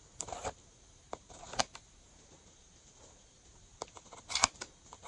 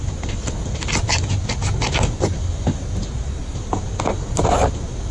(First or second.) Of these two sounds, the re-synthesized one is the first